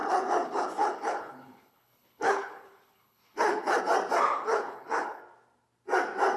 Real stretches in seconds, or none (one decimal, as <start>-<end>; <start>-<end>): 3.8-4.3; 5.2-6.4